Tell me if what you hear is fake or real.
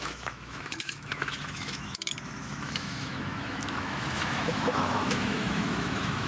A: fake